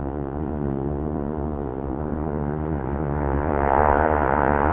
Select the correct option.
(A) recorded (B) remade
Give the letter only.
B